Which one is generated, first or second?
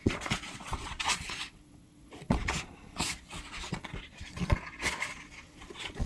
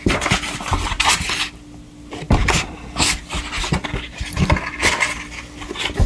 first